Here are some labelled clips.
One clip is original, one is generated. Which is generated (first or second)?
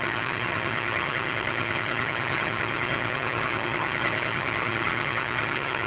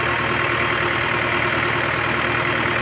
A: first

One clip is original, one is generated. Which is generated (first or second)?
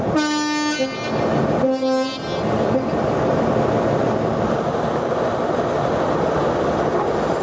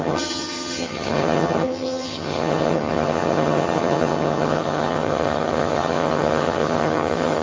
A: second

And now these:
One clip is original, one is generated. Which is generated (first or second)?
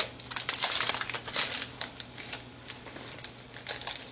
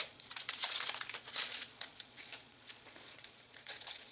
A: second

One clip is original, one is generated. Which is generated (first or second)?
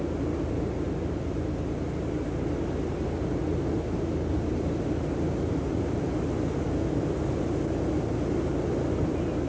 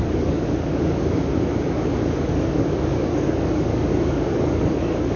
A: second